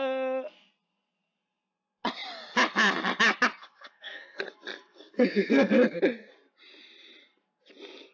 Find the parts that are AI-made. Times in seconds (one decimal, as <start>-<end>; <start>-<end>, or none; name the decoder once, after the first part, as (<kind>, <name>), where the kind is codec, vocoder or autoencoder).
3.6-4.4 (codec, SNAC); 4.9-6.0